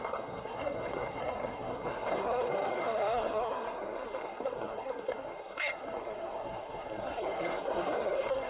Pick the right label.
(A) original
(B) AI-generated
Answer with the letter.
B